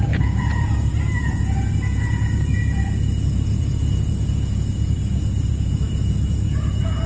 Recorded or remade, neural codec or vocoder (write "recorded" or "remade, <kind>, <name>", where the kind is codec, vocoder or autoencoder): remade, vocoder, Vocos